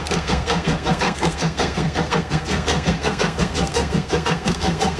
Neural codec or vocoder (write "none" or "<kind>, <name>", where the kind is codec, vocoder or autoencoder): codec, SNAC